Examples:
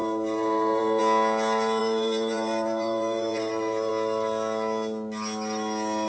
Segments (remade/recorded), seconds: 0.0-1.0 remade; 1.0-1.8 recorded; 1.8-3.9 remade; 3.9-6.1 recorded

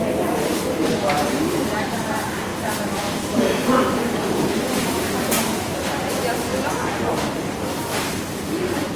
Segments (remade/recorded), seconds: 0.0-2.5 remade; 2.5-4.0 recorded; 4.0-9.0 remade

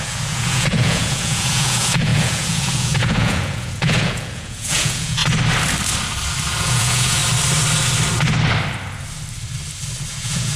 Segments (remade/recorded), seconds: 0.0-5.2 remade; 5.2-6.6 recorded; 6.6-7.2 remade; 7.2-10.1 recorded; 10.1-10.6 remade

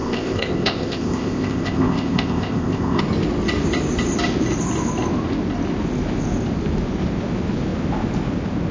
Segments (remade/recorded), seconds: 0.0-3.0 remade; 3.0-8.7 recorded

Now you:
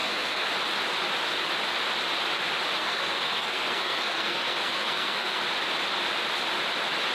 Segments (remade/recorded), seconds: 0.0-0.5 remade; 0.5-2.8 recorded; 2.8-5.4 remade; 5.4-7.1 recorded